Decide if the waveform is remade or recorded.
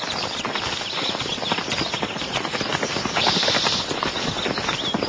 recorded